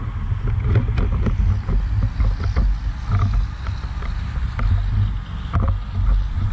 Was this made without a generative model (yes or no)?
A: yes